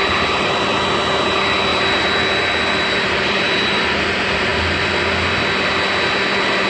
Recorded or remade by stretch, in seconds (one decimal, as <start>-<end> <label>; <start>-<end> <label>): 0.0-0.5 remade; 0.5-1.7 recorded; 1.7-4.0 remade; 4.0-6.7 recorded